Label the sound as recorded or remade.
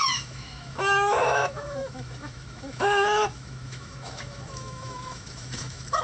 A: remade